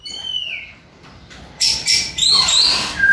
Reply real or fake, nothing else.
real